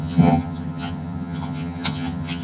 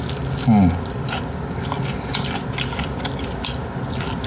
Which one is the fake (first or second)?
first